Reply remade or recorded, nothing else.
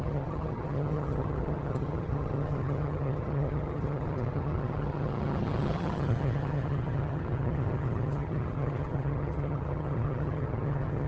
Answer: remade